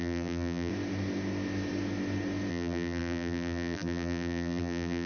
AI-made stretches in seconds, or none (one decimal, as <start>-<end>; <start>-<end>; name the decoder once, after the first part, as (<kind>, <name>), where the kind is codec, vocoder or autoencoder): 0.0-0.7 (vocoder, BigVGAN v2); 2.5-5.1